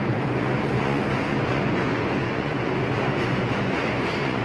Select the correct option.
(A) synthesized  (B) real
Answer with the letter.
A